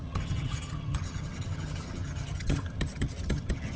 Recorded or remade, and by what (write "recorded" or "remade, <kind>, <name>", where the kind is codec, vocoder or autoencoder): remade, vocoder, HiFi-GAN